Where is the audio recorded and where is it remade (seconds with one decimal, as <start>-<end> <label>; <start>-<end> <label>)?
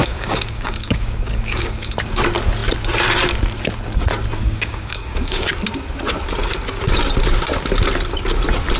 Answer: 0.0-1.9 remade; 1.9-4.4 recorded; 4.4-5.5 remade; 5.5-8.8 recorded